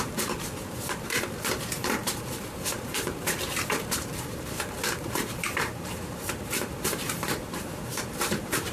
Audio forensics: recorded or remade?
remade